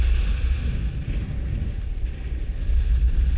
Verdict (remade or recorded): recorded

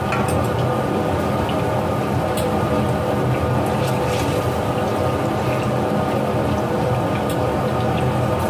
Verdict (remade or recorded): recorded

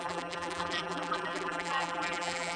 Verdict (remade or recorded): remade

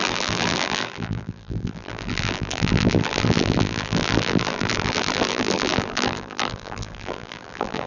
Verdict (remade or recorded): remade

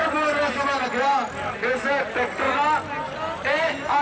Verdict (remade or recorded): recorded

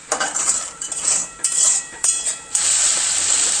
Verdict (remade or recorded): remade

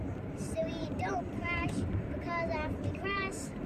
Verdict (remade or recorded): remade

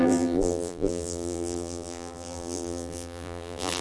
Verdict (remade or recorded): remade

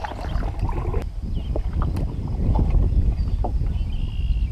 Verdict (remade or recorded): recorded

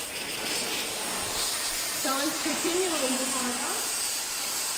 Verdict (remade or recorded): remade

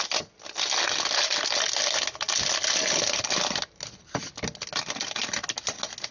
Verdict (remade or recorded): recorded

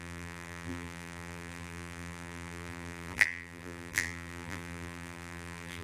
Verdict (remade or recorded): remade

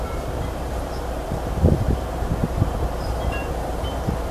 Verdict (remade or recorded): remade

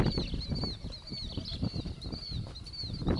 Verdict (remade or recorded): recorded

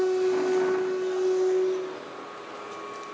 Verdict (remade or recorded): recorded